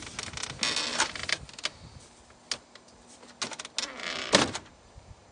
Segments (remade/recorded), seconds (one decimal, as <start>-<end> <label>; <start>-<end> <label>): 0.0-0.9 recorded; 0.9-1.4 remade; 1.4-4.0 recorded; 4.0-5.3 remade